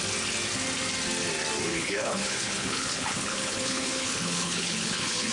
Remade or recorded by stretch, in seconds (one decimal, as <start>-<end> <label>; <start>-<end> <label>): 0.0-1.7 recorded; 1.7-5.3 remade